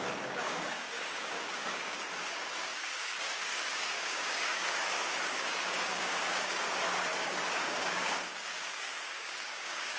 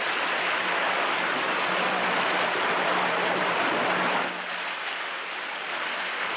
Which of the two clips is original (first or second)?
second